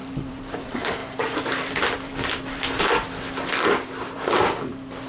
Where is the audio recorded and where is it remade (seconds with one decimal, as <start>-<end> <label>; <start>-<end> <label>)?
0.0-0.6 remade; 0.6-1.0 recorded; 1.0-2.8 remade; 2.8-3.5 recorded; 3.5-4.6 remade; 4.6-5.1 recorded

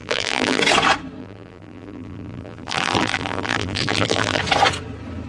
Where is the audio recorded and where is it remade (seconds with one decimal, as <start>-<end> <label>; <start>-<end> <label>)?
0.0-0.6 remade; 0.6-1.2 recorded; 1.2-4.4 remade; 4.4-5.3 recorded

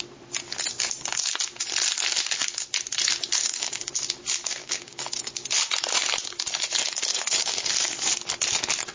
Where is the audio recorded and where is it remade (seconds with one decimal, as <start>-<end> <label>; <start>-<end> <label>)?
0.0-3.4 recorded; 3.4-3.9 remade; 3.9-4.6 recorded; 4.6-5.3 remade; 5.3-7.1 recorded; 7.1-7.7 remade; 7.7-8.9 recorded